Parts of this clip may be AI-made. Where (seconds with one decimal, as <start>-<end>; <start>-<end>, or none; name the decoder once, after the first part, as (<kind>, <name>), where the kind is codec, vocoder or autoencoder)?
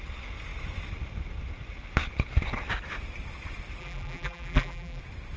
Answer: 3.8-5.0 (vocoder, BigVGAN v2)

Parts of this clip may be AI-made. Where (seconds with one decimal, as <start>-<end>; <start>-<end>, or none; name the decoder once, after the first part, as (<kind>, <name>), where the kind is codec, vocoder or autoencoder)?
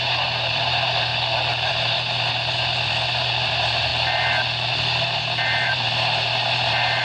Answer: 0.0-1.1 (vocoder, BigVGAN v2); 1.7-3.9; 4.7-7.0